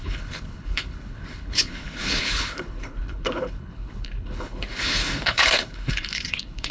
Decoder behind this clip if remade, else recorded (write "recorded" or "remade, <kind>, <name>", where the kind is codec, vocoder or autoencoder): remade, codec, HILCodec